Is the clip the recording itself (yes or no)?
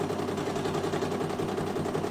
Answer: yes